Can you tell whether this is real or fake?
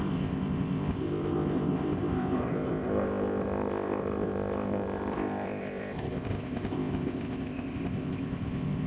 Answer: fake